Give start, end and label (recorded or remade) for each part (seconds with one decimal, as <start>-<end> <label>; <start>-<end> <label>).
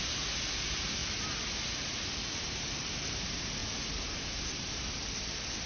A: 0.0-1.0 remade; 1.0-2.3 recorded; 2.3-3.6 remade; 3.6-4.5 recorded; 4.5-5.0 remade; 5.0-5.7 recorded